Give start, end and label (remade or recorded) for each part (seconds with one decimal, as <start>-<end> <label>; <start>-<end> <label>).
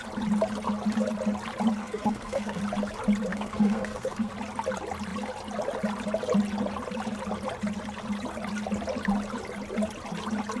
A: 0.0-1.8 recorded; 1.8-2.6 remade; 2.6-3.3 recorded; 3.3-4.3 remade; 4.3-10.6 recorded